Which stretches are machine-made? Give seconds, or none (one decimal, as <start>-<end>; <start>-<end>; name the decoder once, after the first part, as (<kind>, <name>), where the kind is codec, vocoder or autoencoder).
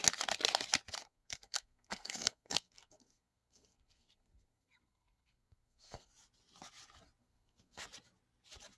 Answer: 1.0-6.1 (codec, SNAC); 7.2-7.8